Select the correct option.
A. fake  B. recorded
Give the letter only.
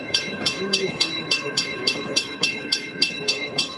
A